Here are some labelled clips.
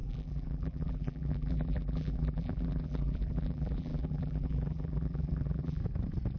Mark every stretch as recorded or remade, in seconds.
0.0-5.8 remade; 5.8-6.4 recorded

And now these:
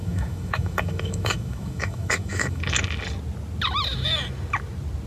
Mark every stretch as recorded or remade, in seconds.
0.0-2.6 remade; 2.6-5.1 recorded

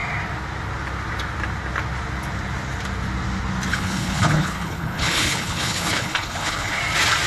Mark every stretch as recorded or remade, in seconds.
0.0-3.7 recorded; 3.7-6.8 remade; 6.8-7.3 recorded

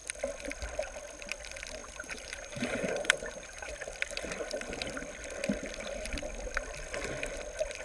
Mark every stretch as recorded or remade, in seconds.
0.0-1.8 recorded; 1.8-3.7 remade; 3.7-7.8 recorded

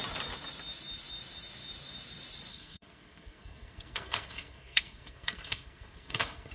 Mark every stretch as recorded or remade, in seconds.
0.0-2.5 recorded; 2.5-6.5 remade

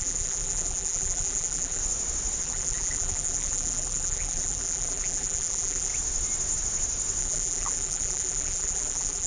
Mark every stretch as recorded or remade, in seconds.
0.0-1.8 remade; 1.8-2.4 recorded; 2.4-5.9 remade; 5.9-7.2 recorded; 7.2-9.3 remade

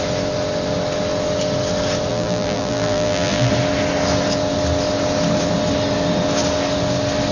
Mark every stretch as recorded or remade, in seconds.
0.0-2.1 recorded; 2.1-3.5 remade; 3.5-7.3 recorded

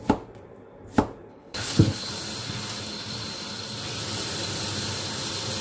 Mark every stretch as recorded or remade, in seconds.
0.0-1.3 recorded; 1.3-2.1 remade; 2.1-5.6 recorded